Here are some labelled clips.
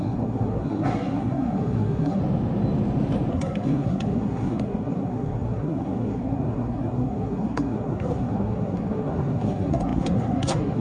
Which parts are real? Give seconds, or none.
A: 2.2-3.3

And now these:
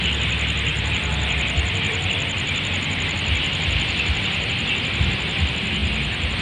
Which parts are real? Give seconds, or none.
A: 0.0-0.7; 4.5-5.8